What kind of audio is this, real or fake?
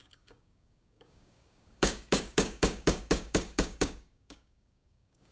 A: fake